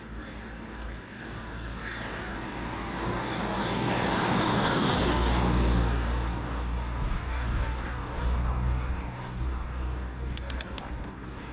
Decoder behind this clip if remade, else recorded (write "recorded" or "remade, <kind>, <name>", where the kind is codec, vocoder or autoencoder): remade, codec, DAC